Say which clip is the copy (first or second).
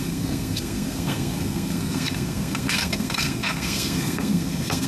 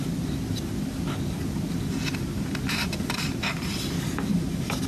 first